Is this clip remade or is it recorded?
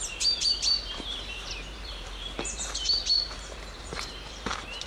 remade